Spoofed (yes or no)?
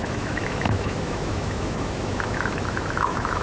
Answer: yes